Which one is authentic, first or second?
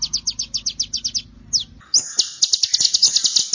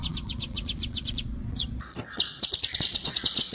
first